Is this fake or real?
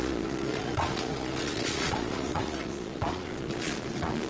fake